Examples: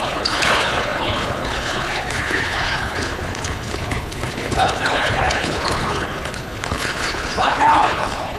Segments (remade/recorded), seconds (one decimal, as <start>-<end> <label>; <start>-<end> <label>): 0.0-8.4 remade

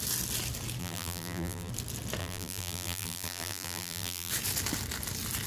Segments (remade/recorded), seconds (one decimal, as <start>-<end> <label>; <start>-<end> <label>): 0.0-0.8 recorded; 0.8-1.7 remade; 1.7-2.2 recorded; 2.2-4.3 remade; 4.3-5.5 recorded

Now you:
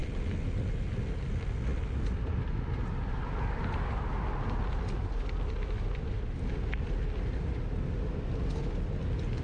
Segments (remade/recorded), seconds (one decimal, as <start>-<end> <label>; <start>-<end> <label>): 0.0-9.4 recorded